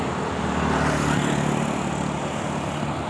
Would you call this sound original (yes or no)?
yes